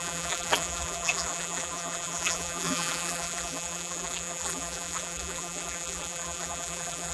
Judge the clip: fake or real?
fake